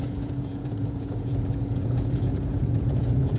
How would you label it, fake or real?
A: fake